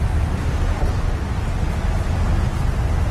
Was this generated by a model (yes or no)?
no